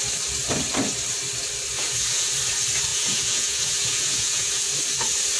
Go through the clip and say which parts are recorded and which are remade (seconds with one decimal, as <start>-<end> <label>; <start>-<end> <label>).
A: 0.0-1.7 recorded; 1.7-2.3 remade; 2.3-2.9 recorded; 2.9-4.7 remade; 4.7-5.4 recorded

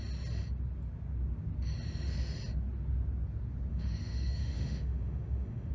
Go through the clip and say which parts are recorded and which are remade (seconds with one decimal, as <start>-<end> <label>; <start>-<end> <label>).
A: 0.0-3.7 recorded; 3.7-5.7 remade